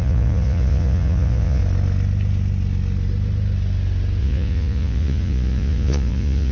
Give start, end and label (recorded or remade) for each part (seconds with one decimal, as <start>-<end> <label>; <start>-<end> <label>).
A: 0.0-1.6 remade; 1.6-4.2 recorded; 4.2-6.5 remade